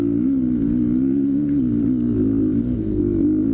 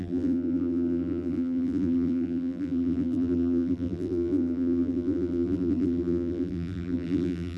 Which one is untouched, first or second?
first